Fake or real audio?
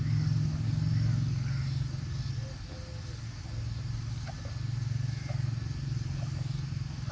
real